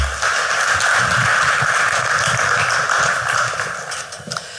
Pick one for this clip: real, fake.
real